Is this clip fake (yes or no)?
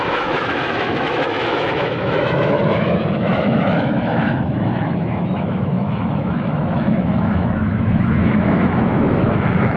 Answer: yes